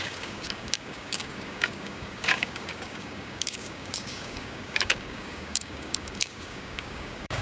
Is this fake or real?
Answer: fake